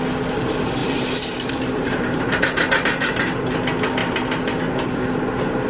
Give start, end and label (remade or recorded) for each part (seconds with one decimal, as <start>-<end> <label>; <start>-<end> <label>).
0.0-0.8 recorded; 0.8-3.4 remade; 3.4-5.7 recorded